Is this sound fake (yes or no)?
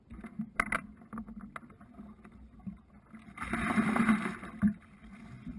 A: no